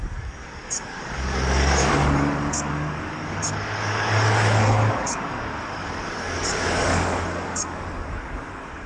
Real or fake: fake